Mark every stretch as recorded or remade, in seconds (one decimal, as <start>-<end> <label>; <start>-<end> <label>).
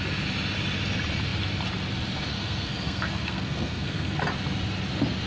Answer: 0.0-2.3 recorded; 2.3-4.2 remade; 4.2-5.3 recorded